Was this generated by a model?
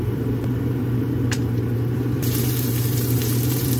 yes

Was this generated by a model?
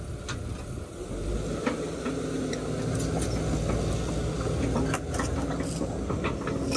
no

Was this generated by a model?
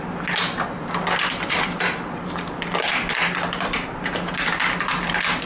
yes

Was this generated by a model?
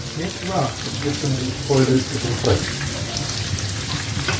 yes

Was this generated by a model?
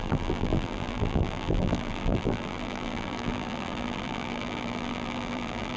yes